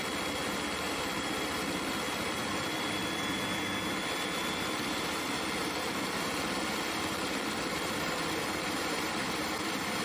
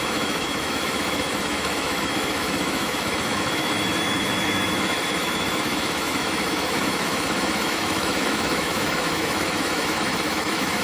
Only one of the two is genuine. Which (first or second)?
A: first